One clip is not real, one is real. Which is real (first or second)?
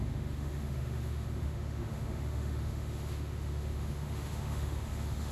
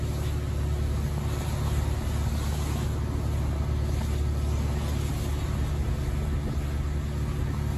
second